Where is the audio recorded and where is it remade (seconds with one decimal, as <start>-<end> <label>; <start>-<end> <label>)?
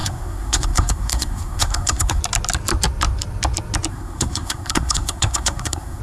0.0-2.2 remade; 2.2-3.9 recorded; 3.9-6.0 remade